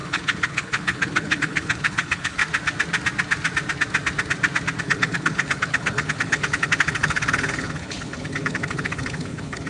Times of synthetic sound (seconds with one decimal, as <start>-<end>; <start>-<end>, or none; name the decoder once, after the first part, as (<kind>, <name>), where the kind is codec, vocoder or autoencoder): 0.0-2.4 (codec, HILCodec); 4.8-9.7